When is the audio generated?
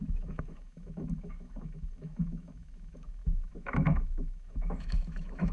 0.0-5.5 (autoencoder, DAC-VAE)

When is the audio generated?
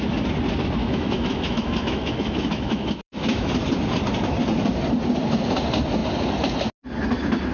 0.8-3.5 (autoencoder, DAC-VAE)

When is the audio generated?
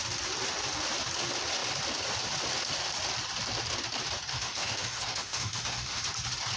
4.3-6.0 (autoencoder, DAC-VAE)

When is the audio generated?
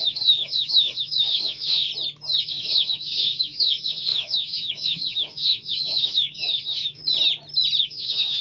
0.0-1.9 (autoencoder, DAC-VAE); 2.4-7.0; 7.8-8.4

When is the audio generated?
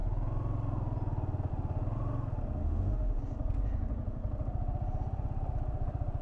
2.6-3.2 (autoencoder, DAC-VAE)